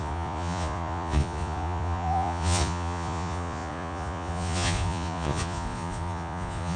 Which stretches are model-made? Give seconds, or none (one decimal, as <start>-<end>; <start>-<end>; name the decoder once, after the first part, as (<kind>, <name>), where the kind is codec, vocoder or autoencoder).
0.0-6.8 (vocoder, Vocos)